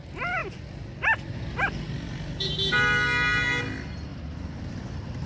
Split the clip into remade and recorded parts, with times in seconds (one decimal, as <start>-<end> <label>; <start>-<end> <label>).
0.0-5.3 recorded